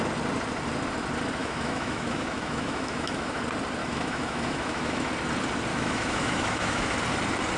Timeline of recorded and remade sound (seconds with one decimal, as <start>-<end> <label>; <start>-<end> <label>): 0.0-1.4 recorded; 1.4-3.4 remade; 3.4-3.8 recorded; 3.8-5.1 remade; 5.1-5.7 recorded; 5.7-6.9 remade; 6.9-7.6 recorded